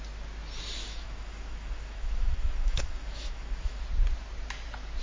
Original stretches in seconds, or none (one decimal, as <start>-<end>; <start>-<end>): 0.0-0.8; 3.8-5.0